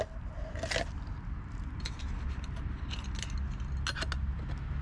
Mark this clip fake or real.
real